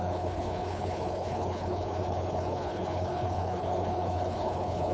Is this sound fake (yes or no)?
yes